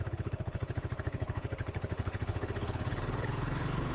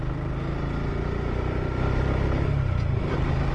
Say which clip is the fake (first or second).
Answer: first